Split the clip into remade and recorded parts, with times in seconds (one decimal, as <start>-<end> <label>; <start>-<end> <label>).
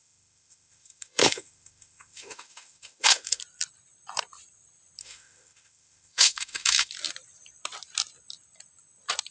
0.0-3.4 remade; 3.4-5.0 recorded; 5.0-6.9 remade; 6.9-9.3 recorded